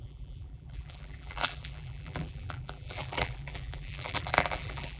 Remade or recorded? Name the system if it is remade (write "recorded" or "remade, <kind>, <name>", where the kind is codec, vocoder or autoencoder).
remade, vocoder, BigVGAN v2